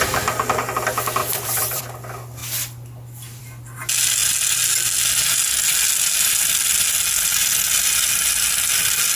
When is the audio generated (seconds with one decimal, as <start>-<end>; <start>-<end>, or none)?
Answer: 1.2-1.8